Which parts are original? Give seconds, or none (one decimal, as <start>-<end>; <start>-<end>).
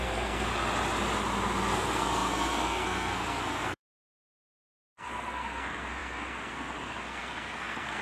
0.5-1.7